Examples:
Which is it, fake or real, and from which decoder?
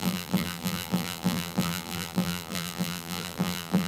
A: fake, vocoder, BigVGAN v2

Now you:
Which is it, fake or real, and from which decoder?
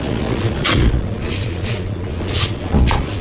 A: fake, vocoder, Vocos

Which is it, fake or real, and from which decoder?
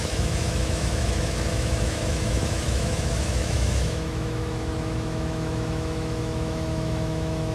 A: fake, autoencoder, DAC-VAE